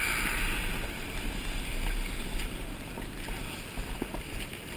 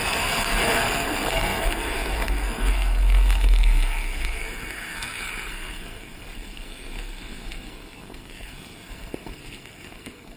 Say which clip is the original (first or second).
first